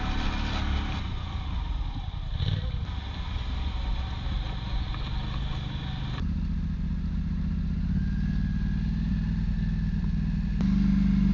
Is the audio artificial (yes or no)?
no